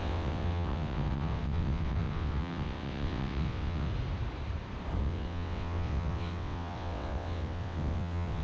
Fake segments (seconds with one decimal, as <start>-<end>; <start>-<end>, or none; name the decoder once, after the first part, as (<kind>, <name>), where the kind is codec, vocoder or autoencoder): 0.0-3.9 (vocoder, WaveNeXt); 5.0-8.4